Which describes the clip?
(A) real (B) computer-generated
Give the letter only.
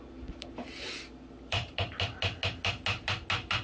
A